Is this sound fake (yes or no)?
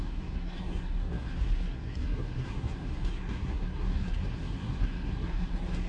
yes